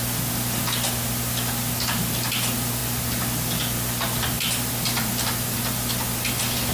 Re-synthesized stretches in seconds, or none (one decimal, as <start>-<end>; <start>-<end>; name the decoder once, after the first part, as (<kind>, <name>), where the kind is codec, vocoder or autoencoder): none